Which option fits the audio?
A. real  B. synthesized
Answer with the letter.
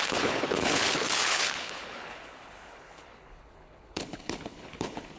B